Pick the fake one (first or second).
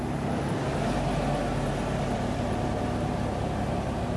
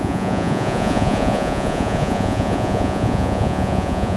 second